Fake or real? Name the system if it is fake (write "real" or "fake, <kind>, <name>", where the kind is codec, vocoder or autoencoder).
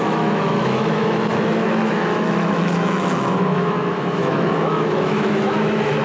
fake, autoencoder, DAC-VAE